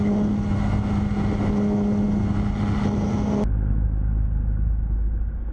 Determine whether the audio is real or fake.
real